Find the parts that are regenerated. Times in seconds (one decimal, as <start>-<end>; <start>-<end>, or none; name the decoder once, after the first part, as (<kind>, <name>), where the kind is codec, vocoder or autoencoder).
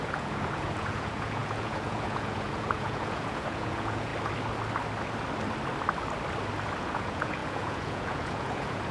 0.0-4.1 (vocoder, Vocos); 6.8-8.9